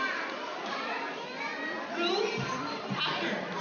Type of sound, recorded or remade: recorded